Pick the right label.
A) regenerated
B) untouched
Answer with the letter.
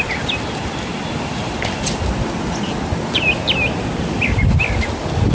B